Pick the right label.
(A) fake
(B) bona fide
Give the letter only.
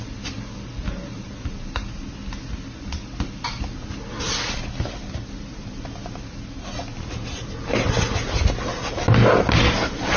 B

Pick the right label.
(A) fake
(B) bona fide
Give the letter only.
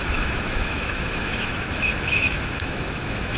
A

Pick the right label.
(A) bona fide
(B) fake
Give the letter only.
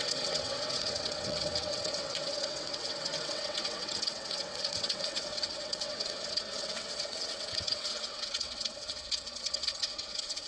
B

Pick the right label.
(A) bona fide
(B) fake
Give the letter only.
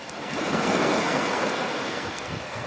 B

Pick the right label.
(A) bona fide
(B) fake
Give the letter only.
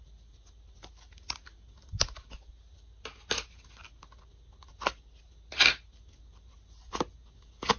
A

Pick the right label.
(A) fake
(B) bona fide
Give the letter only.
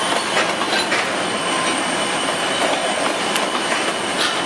B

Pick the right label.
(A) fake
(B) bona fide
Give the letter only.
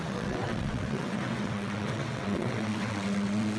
A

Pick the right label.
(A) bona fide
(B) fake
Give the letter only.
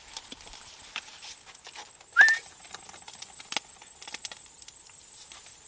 A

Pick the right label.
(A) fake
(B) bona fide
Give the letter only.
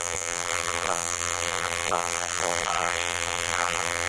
A